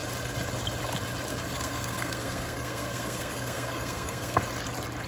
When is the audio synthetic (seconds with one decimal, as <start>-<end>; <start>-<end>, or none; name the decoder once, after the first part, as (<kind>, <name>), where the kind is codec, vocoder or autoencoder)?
1.3-4.4 (codec, SNAC)

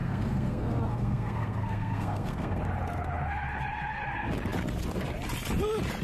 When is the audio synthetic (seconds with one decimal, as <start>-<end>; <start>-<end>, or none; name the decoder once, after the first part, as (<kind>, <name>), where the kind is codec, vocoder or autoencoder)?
0.0-2.6 (codec, SNAC)

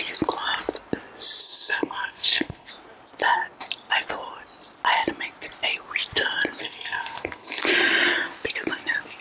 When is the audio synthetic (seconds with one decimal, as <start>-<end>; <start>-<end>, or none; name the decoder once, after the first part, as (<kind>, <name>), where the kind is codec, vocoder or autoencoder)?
1.4-2.7 (codec, SNAC); 6.6-7.6

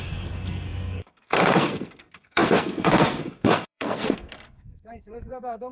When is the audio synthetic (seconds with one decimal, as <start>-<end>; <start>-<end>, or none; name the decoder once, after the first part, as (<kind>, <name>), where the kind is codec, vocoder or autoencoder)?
0.0-5.7 (codec, SNAC)